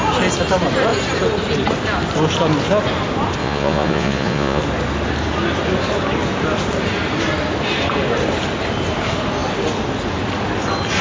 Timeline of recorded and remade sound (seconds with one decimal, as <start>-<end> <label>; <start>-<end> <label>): 0.0-3.4 recorded; 3.4-4.6 remade; 4.6-11.0 recorded